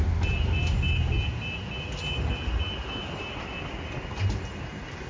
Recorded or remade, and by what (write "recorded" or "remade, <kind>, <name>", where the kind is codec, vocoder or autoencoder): recorded